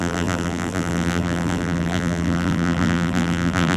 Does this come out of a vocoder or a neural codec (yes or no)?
yes